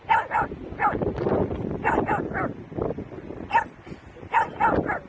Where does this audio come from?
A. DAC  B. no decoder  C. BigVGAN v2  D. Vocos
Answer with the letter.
B